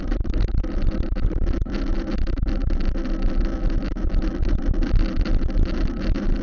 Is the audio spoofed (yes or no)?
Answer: no